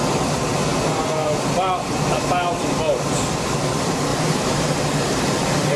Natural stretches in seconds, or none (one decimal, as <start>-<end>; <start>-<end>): 0.0-4.1; 4.8-5.8